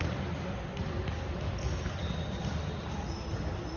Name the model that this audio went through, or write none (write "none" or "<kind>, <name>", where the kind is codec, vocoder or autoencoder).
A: none